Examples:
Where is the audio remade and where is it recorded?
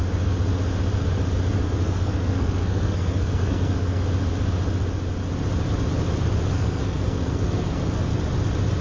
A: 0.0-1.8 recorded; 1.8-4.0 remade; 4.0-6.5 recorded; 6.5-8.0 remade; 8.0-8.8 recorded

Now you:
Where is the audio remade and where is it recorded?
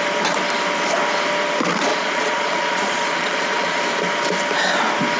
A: 0.0-1.9 recorded; 1.9-3.8 remade; 3.8-5.2 recorded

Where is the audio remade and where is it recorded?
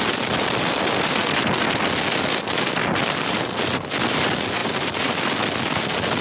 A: 0.0-4.6 recorded; 4.6-5.2 remade; 5.2-6.2 recorded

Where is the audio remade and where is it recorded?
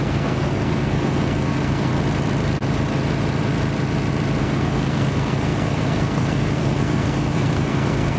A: 0.0-1.9 remade; 1.9-4.4 recorded; 4.4-8.2 remade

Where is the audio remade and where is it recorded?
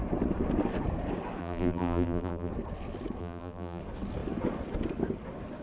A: 0.0-1.4 recorded; 1.4-2.5 remade; 2.5-3.2 recorded; 3.2-3.8 remade; 3.8-5.6 recorded